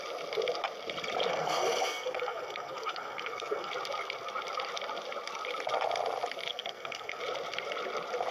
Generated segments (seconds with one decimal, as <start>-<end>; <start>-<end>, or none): 1.3-3.7; 6.5-7.2